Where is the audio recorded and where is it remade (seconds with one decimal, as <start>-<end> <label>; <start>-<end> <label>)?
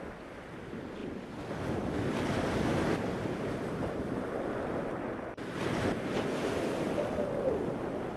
0.0-8.2 recorded